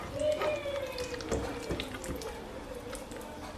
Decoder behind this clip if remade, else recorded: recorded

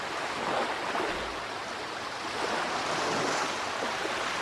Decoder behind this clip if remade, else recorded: recorded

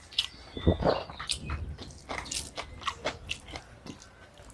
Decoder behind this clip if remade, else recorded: recorded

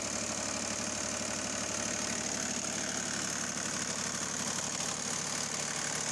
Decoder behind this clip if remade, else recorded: recorded